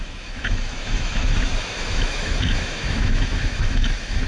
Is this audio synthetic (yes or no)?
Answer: yes